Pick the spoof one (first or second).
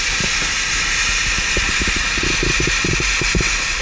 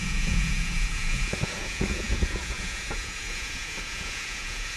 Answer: second